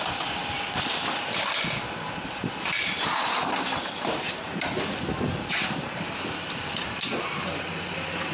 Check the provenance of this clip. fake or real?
real